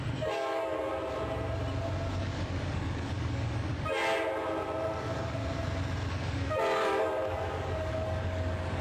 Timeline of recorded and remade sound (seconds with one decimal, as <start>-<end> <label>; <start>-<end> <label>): 0.0-0.9 remade; 0.9-2.2 recorded; 2.2-4.0 remade; 4.0-5.0 recorded; 5.0-5.4 remade; 5.4-6.1 recorded; 6.1-8.8 remade

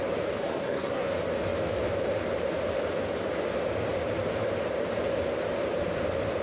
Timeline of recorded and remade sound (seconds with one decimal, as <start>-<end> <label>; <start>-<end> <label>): 0.0-0.4 recorded; 0.4-1.1 remade; 1.1-6.4 recorded